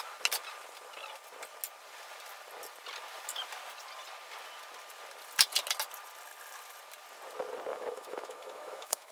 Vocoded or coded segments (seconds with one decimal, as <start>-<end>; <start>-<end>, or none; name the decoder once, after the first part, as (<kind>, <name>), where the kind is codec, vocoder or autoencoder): 7.7-9.1 (autoencoder, DAC-VAE)